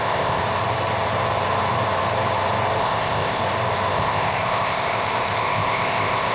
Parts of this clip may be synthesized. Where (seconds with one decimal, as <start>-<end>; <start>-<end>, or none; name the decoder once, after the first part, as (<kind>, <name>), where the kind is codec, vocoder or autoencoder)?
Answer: 0.0-0.4 (codec, ZipCodec); 2.8-3.4; 3.9-6.3